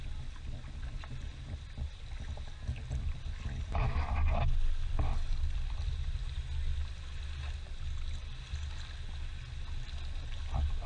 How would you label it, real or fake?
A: real